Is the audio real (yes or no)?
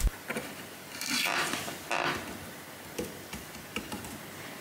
yes